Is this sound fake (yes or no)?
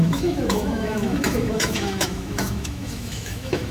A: yes